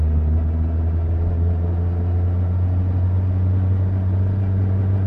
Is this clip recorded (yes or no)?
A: yes